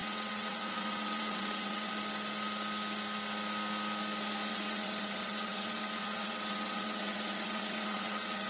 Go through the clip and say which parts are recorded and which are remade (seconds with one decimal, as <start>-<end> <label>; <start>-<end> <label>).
0.0-1.9 remade; 1.9-4.5 recorded; 4.5-8.5 remade

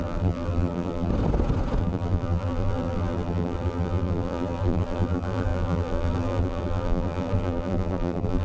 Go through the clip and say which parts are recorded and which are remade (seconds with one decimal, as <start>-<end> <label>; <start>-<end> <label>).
0.0-1.1 remade; 1.1-1.8 recorded; 1.8-8.4 remade

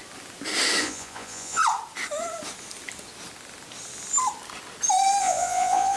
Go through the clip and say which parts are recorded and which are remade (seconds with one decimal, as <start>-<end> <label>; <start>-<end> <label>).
0.0-0.8 recorded; 0.8-1.6 remade; 1.6-5.2 recorded; 5.2-6.0 remade

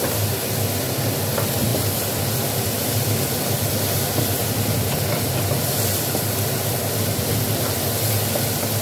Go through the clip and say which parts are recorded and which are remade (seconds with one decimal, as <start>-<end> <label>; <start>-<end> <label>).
0.0-1.7 recorded; 1.7-5.9 remade; 5.9-8.8 recorded

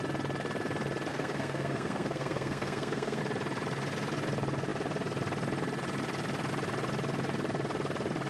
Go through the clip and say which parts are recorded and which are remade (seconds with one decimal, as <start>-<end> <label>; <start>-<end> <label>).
0.0-1.1 recorded; 1.1-3.2 remade; 3.2-8.3 recorded

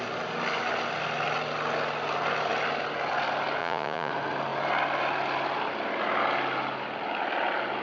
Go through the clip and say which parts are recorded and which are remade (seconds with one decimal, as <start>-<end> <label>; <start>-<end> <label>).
0.0-3.6 recorded; 3.6-4.1 remade; 4.1-7.8 recorded

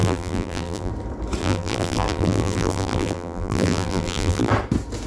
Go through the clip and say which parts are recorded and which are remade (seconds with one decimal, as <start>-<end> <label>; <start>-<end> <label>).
0.0-0.9 remade; 0.9-1.4 recorded; 1.4-4.5 remade; 4.5-5.1 recorded